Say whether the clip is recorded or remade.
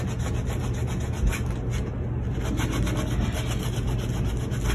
recorded